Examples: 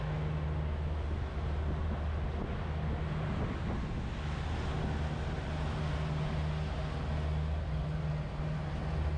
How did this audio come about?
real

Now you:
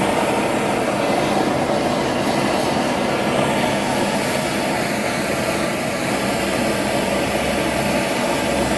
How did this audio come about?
real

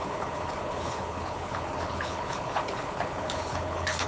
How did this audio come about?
fake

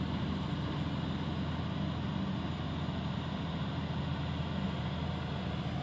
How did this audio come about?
real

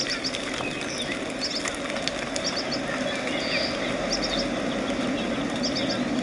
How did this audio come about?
real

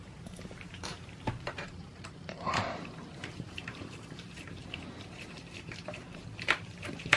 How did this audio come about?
fake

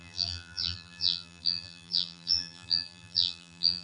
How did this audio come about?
fake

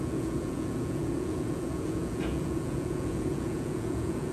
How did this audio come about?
fake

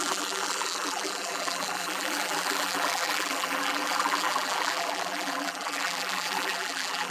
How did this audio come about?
fake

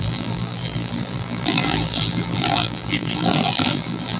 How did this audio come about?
fake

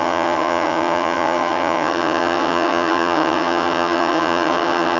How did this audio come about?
fake